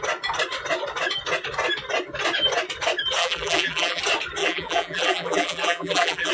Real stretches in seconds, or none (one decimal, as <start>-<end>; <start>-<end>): 0.0-3.2; 4.0-4.4